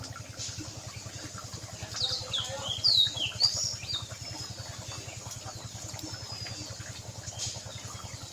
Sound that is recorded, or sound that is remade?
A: recorded